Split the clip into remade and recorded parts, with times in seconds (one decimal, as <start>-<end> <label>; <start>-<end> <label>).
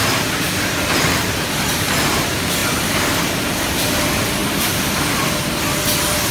0.0-1.0 remade; 1.0-2.6 recorded; 2.6-3.2 remade; 3.2-4.4 recorded; 4.4-5.8 remade; 5.8-6.3 recorded